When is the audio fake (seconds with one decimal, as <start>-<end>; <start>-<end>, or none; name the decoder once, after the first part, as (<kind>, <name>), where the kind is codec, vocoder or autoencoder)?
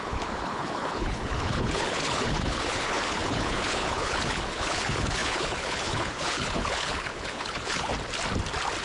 0.0-7.9 (codec, HILCodec)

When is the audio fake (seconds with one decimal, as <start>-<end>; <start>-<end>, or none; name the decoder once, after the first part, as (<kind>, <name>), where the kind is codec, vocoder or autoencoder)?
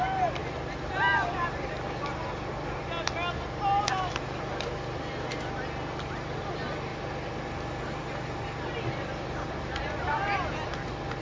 none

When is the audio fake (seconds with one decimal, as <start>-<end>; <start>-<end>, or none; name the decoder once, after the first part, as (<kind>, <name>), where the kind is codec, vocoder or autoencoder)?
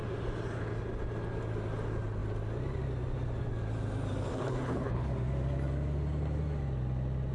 4.3-5.1 (codec, HILCodec)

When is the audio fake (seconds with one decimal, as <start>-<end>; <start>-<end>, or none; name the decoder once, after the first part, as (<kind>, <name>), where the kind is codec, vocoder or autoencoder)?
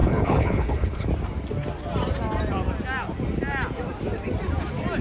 0.0-1.1 (codec, HILCodec)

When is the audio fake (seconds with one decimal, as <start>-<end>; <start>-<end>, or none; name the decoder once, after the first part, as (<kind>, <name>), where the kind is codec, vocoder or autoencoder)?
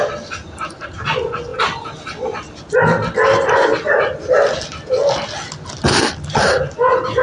none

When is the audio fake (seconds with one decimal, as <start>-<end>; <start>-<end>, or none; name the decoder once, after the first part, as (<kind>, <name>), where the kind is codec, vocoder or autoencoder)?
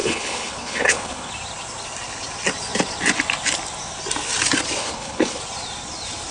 0.0-1.3 (codec, HILCodec); 4.8-5.4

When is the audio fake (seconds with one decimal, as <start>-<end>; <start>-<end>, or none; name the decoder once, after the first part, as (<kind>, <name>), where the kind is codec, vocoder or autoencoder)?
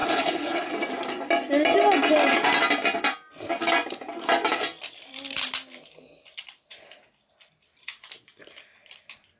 0.0-0.7 (codec, HILCodec)